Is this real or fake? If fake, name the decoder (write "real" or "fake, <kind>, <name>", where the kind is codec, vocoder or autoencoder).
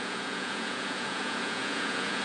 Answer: fake, vocoder, Vocos